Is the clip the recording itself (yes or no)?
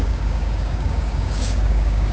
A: no